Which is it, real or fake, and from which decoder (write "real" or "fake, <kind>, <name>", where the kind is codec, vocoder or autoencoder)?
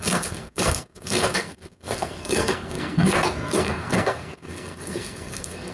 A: fake, codec, SNAC